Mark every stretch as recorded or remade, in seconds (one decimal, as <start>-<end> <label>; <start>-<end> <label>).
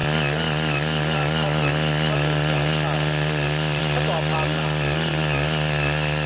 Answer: 0.0-6.3 recorded